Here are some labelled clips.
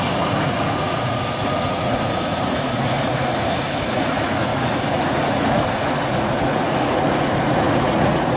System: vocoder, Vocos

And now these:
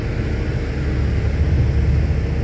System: none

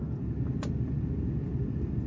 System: none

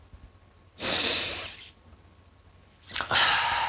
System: none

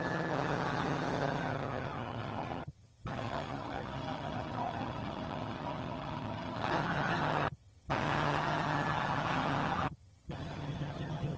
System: vocoder, HiFi-GAN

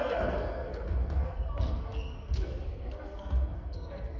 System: codec, SNAC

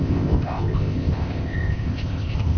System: codec, ZipCodec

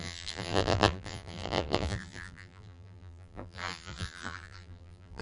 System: vocoder, BigVGAN v2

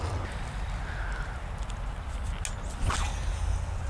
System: none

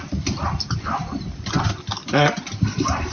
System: none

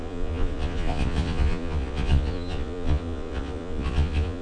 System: vocoder, Vocos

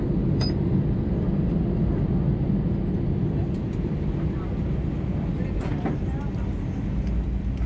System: none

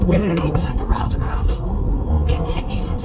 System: codec, SNAC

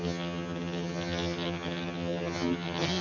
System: vocoder, HiFi-GAN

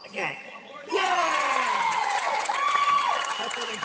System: vocoder, HiFi-GAN